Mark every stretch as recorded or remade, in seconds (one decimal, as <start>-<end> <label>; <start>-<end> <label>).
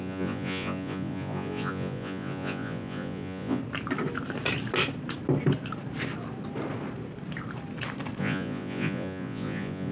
0.0-3.6 remade; 3.6-8.2 recorded; 8.2-9.9 remade